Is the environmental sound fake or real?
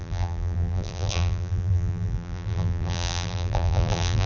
fake